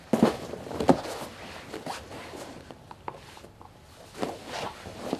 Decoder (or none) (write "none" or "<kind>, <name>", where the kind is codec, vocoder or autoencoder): none